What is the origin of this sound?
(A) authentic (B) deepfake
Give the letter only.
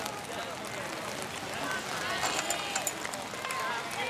A